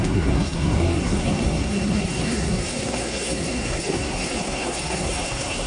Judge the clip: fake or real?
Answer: fake